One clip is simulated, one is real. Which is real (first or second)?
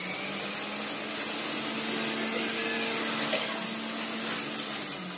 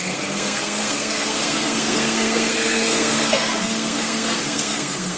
first